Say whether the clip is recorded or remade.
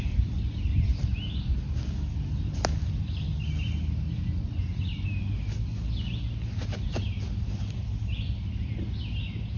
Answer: recorded